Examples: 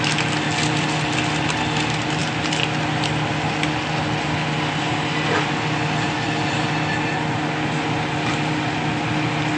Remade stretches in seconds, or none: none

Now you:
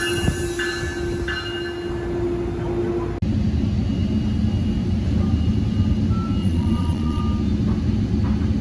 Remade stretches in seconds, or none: 6.4-7.2 (vocoder, Vocos)

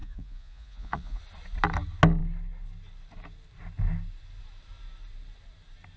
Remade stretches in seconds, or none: 0.0-1.2 (vocoder, Vocos)

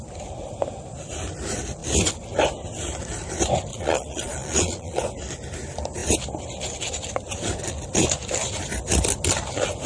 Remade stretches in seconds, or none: 3.7-5.0 (vocoder, Vocos)

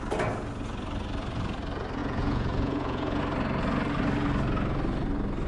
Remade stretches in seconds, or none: 2.0-3.2 (vocoder, Vocos)

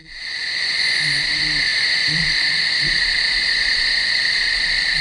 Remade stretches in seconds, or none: 0.0-1.0 (vocoder, Vocos); 1.7-2.3; 3.4-4.1

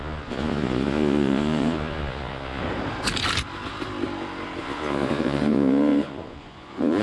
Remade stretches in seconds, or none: 0.0-2.6 (vocoder, Vocos); 4.6-7.0